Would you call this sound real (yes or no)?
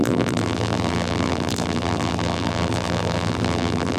no